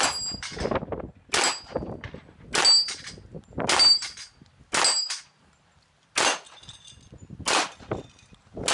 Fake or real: real